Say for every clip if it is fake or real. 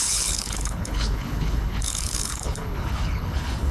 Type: fake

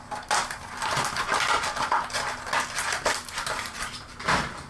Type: real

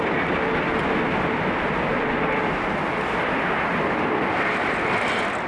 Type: real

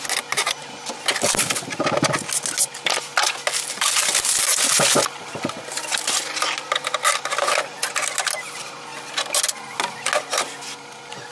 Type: real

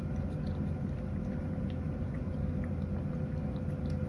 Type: real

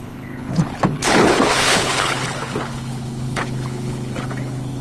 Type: fake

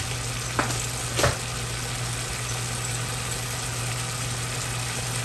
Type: real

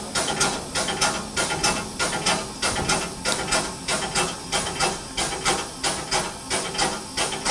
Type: real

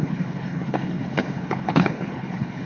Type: fake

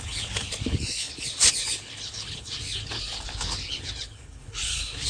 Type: fake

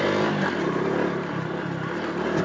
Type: real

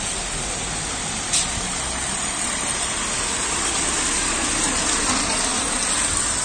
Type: real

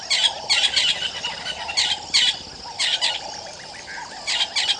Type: real